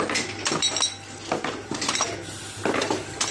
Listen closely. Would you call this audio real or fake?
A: real